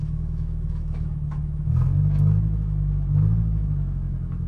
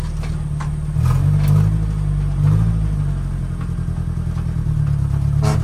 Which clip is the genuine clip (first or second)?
second